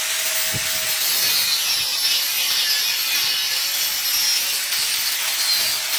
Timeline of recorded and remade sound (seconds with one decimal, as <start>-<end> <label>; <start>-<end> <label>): 0.0-6.0 recorded